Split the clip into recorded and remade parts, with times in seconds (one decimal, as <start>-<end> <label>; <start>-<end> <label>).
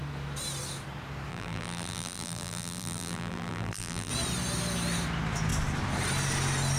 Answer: 0.0-1.3 recorded; 1.3-4.1 remade; 4.1-6.8 recorded